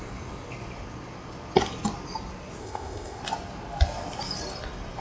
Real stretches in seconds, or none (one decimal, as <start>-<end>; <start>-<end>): 0.0-2.6; 3.2-5.0